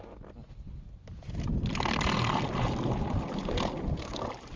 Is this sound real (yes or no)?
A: yes